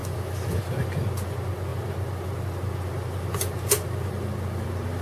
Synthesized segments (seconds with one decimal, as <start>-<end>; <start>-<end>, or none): 0.0-0.6

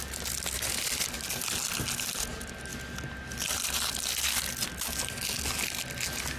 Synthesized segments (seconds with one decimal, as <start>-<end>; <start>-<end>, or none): none

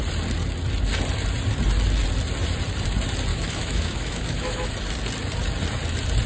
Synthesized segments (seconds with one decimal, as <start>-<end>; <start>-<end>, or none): 3.3-4.7

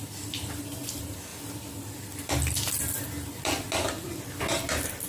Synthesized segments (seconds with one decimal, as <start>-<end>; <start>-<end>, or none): none

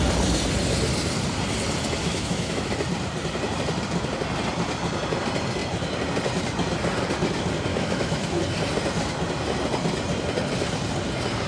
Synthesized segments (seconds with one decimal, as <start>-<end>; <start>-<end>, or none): 2.0-2.7; 7.7-8.4